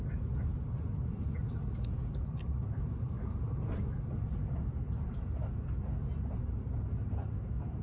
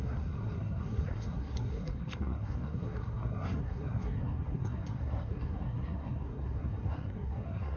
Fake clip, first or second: second